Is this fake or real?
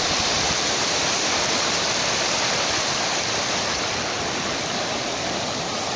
real